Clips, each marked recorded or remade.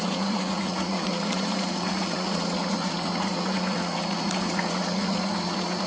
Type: remade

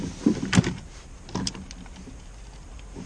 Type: recorded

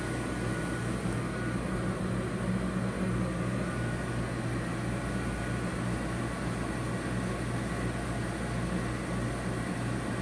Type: recorded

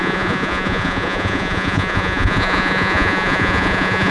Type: remade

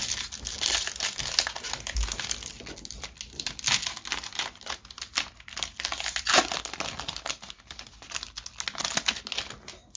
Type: recorded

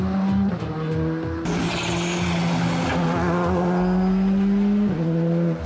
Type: recorded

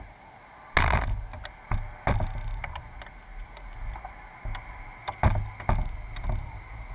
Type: recorded